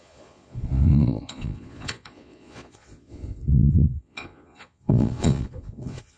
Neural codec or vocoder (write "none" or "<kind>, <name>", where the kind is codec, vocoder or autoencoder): vocoder, Vocos